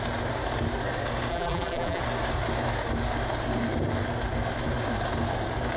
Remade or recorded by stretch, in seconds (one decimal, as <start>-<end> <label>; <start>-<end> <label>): 0.0-1.3 recorded; 1.3-2.0 remade; 2.0-5.8 recorded